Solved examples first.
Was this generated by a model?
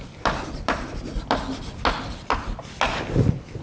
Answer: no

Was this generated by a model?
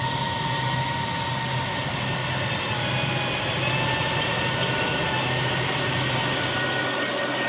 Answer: no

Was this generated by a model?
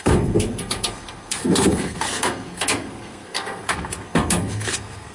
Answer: yes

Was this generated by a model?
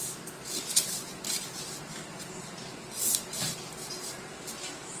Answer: no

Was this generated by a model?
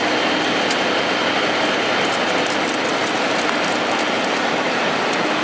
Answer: no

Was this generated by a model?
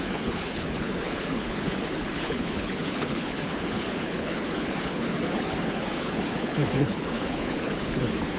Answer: yes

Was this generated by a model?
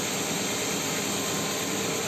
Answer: no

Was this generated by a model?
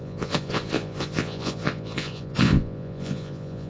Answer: yes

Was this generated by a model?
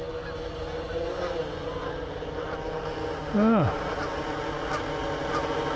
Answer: no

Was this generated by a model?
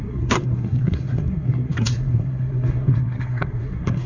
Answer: yes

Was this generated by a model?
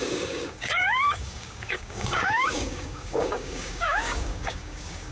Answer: yes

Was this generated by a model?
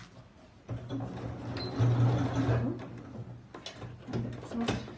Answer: no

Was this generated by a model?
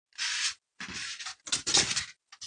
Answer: no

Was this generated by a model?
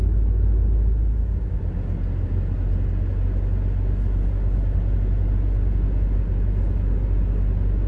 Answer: no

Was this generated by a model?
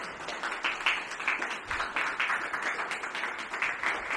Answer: no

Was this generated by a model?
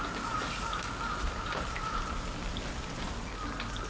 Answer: no